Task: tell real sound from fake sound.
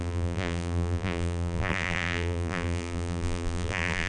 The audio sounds fake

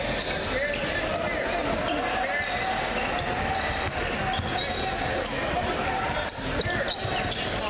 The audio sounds real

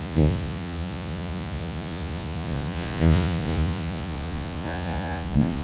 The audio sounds fake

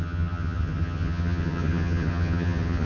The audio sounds fake